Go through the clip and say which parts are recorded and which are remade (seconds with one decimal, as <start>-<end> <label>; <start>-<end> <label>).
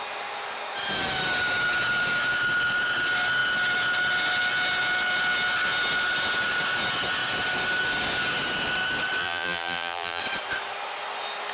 0.0-9.2 recorded; 9.2-10.2 remade; 10.2-11.5 recorded